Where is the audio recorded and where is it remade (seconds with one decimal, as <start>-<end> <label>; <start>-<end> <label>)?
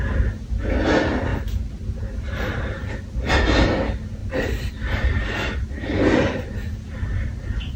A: 0.0-1.3 recorded; 1.3-2.9 remade; 2.9-4.2 recorded; 4.2-4.7 remade; 4.7-7.8 recorded